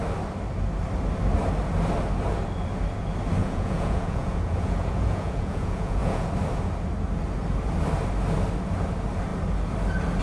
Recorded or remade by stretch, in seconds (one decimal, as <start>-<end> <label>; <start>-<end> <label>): 0.0-3.4 recorded; 3.4-6.3 remade; 6.3-10.2 recorded